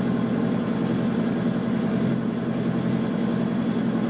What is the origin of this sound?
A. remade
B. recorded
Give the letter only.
B